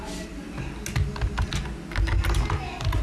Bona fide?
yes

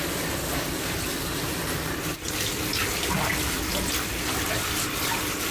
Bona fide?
yes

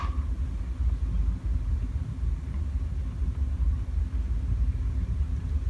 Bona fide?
yes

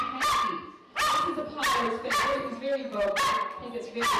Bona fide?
yes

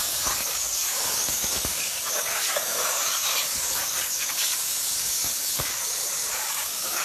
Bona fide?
no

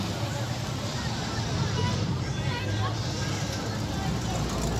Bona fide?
yes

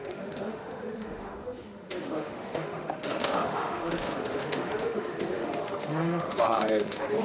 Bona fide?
no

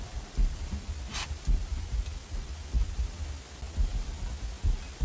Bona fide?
yes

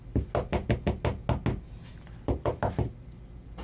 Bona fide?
yes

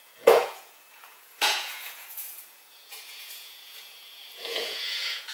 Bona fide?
no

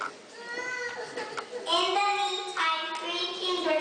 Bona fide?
yes